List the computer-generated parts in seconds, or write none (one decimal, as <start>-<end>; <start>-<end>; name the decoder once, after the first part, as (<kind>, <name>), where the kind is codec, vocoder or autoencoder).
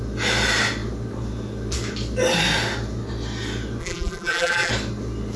3.8-4.7 (vocoder, BigVGAN v2)